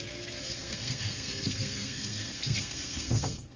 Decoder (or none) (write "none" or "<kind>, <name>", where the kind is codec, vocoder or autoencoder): codec, SNAC